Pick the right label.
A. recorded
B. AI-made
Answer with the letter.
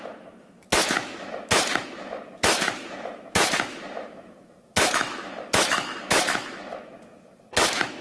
B